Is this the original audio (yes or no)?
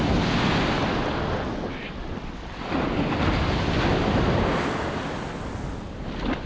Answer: yes